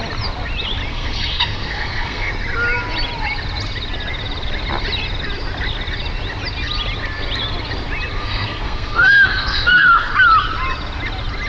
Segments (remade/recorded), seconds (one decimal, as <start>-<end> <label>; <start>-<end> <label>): 0.0-0.9 recorded; 0.9-2.3 remade; 2.3-8.2 recorded; 8.2-10.1 remade; 10.1-11.5 recorded